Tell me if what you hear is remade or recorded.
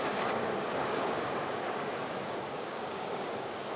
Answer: remade